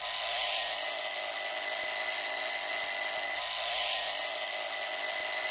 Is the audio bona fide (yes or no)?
yes